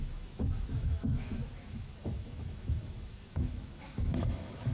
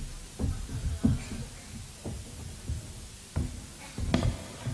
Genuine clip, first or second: second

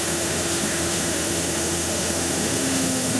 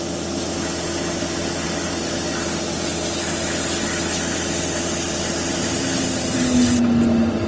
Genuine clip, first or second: second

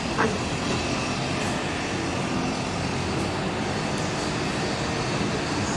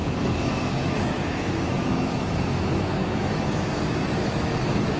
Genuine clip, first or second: first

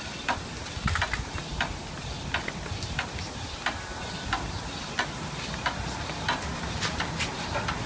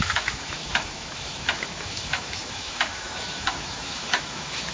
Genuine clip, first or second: first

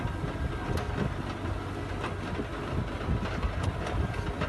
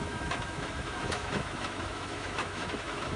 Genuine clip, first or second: first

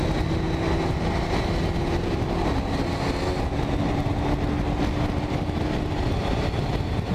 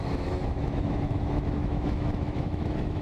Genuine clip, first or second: first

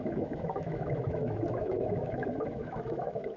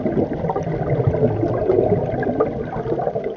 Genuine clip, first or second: second